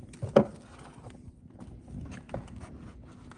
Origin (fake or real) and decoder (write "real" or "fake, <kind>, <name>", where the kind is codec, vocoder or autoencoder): real